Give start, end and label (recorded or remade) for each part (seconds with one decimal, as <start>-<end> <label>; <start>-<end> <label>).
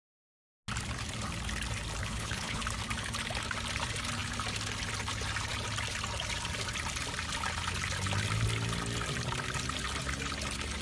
0.0-2.0 recorded; 2.0-2.6 remade; 2.6-10.8 recorded